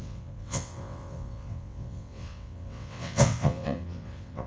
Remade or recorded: remade